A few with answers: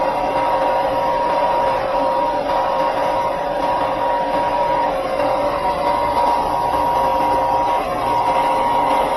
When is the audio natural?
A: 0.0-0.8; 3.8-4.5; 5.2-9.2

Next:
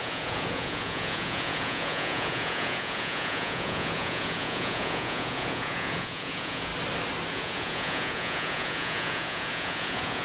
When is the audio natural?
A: 6.7-7.3